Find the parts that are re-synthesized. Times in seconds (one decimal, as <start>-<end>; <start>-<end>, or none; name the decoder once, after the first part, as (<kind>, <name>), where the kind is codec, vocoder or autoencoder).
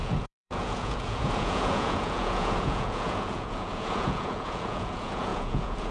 0.0-5.9 (vocoder, Vocos)